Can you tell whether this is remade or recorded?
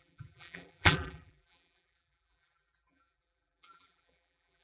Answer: remade